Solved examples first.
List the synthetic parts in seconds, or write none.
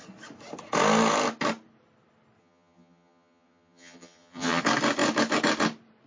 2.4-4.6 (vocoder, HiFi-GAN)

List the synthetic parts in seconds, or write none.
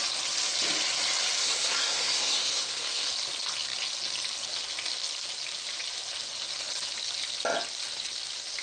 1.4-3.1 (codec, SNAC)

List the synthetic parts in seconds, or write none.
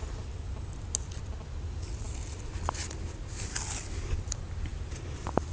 none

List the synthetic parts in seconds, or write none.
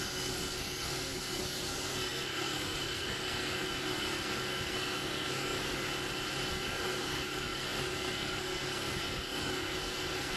0.0-5.9 (codec, SNAC); 6.5-10.4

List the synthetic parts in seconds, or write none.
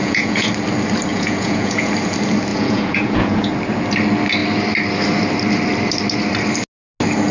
0.0-0.5 (vocoder, Vocos); 1.1-1.9; 2.5-3.5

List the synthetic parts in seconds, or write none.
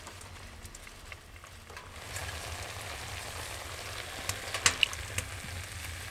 none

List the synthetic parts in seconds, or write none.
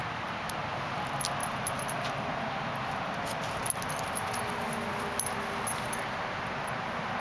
1.4-3.1 (vocoder, BigVGAN v2)